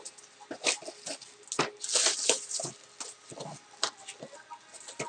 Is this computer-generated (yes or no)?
no